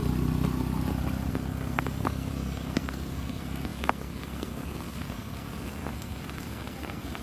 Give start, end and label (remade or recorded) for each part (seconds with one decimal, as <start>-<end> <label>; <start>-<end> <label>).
0.0-1.3 recorded; 1.3-7.2 remade